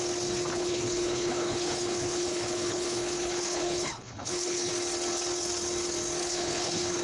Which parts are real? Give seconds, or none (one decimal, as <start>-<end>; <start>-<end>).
0.0-0.5; 4.7-6.2